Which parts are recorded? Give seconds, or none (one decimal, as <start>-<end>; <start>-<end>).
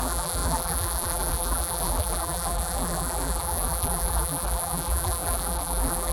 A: none